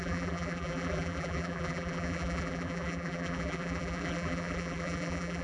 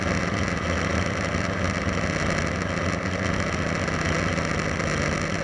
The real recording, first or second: second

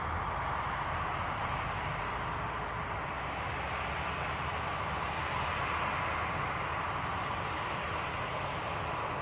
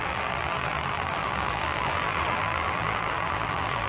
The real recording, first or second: first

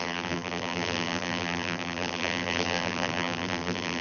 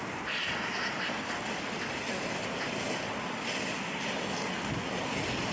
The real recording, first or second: second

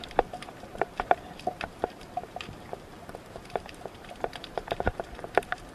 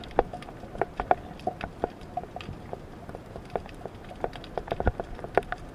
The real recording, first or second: second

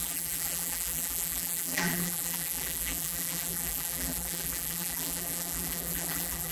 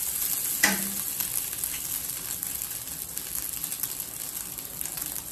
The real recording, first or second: second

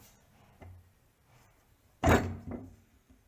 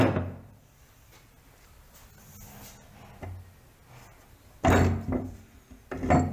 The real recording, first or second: second